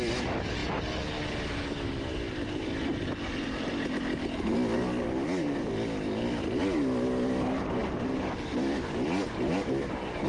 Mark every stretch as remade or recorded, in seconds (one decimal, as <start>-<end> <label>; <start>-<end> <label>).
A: 0.0-10.3 recorded